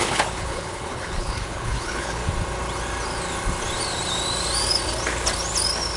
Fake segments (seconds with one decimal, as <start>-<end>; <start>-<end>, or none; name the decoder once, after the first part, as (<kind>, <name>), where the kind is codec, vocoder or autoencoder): 0.0-2.2 (codec, HILCodec)